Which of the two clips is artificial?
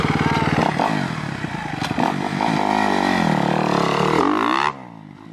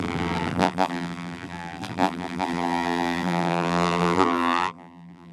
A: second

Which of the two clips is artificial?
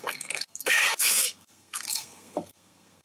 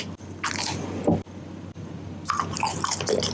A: first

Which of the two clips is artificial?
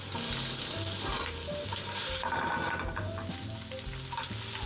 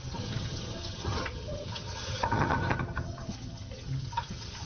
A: second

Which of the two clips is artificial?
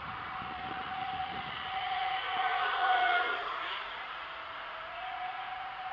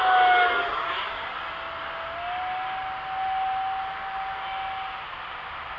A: first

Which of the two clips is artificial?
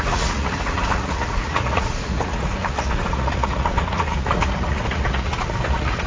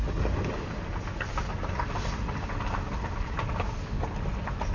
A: first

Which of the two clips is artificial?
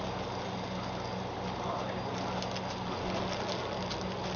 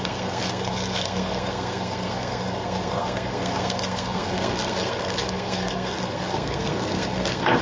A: second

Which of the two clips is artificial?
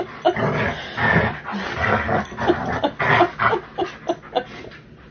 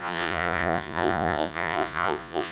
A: second